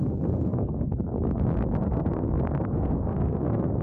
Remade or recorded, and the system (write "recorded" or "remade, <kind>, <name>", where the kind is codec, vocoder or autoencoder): remade, codec, SNAC